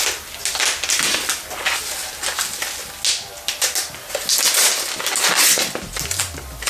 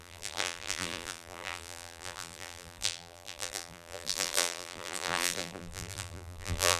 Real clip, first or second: first